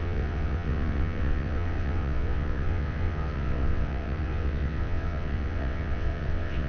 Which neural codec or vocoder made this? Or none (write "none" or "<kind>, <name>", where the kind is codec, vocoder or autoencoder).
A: vocoder, WaveNeXt